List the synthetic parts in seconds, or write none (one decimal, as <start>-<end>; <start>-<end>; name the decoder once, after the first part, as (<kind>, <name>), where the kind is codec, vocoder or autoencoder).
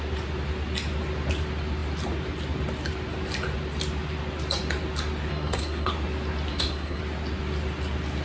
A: 5.3-5.9 (codec, SNAC); 6.5-7.0